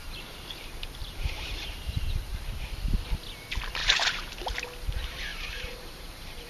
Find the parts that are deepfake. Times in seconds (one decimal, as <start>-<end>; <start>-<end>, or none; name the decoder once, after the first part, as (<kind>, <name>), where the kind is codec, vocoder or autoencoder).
1.0-2.4 (vocoder, BigVGAN v2); 3.8-4.4; 5.3-6.5